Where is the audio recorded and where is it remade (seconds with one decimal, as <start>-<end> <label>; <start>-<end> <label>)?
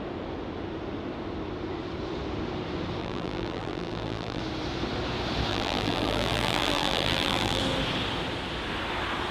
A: 0.0-3.0 recorded; 3.0-4.4 remade; 4.4-5.5 recorded; 5.5-7.6 remade; 7.6-9.3 recorded